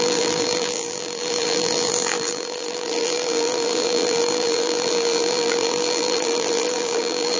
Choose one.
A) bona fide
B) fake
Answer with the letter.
B